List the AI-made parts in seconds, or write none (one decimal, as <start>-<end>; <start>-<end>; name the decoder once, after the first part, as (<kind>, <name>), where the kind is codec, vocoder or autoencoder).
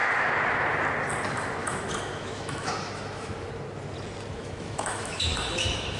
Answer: 1.6-3.5 (autoencoder, DAC-VAE); 4.4-6.0